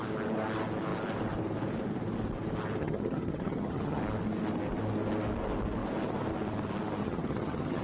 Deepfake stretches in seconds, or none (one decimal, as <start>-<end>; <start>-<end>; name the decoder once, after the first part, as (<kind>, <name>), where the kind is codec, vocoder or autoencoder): 2.8-4.0 (vocoder, HiFi-GAN); 7.0-7.8